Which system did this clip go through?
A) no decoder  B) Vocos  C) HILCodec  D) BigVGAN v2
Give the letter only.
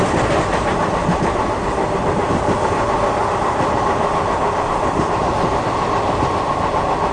A